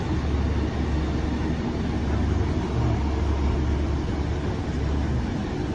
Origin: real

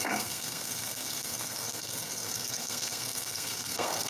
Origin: fake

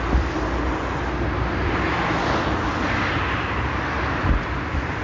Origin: real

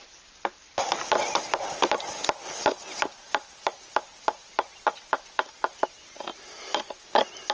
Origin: real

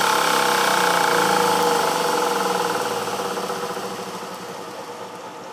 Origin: real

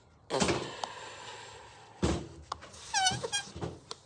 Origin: real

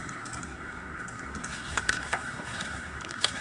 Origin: fake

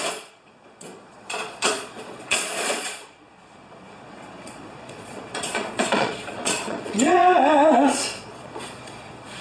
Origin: fake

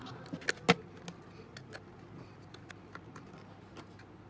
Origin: real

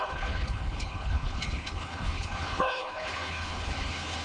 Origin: fake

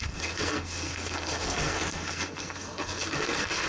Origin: fake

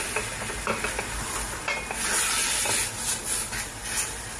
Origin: real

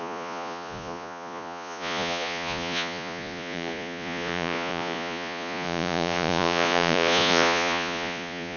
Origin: fake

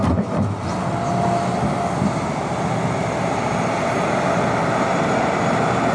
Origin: real